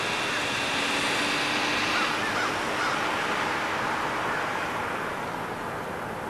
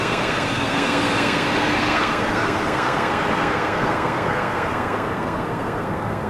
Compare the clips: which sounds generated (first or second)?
second